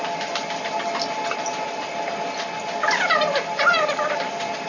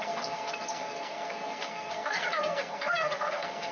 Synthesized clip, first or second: second